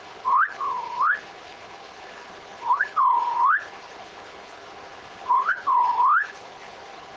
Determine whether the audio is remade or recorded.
remade